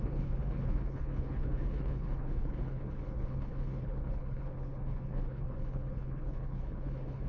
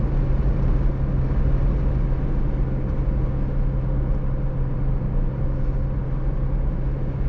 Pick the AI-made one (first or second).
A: first